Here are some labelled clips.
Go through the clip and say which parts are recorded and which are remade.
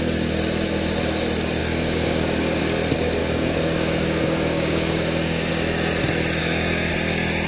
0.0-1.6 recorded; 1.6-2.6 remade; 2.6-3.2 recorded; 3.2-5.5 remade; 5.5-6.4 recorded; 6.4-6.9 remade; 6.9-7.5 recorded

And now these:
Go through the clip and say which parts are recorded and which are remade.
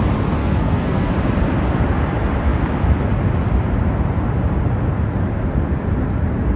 0.0-0.4 recorded; 0.4-1.1 remade; 1.1-6.6 recorded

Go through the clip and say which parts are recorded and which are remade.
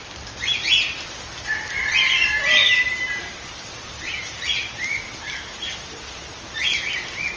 0.0-2.6 recorded; 2.6-6.8 remade; 6.8-7.4 recorded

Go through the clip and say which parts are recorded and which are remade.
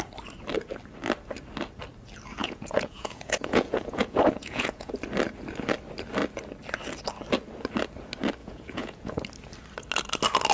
0.0-2.4 recorded; 2.4-4.9 remade; 4.9-8.4 recorded; 8.4-9.2 remade; 9.2-10.5 recorded